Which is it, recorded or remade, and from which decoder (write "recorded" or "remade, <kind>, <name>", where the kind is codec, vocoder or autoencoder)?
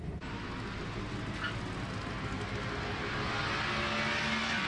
recorded